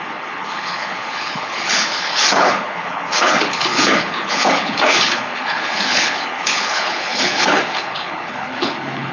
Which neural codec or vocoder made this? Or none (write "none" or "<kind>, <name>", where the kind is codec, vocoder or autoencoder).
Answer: codec, HILCodec